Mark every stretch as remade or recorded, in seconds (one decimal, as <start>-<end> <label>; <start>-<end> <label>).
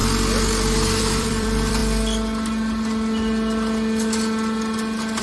0.0-1.0 recorded; 1.0-1.8 remade; 1.8-5.2 recorded